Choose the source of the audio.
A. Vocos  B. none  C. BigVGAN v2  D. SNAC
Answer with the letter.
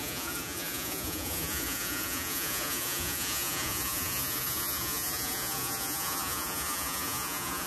A